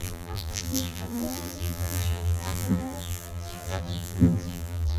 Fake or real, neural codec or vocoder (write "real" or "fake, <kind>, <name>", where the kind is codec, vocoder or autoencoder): fake, vocoder, BigVGAN v2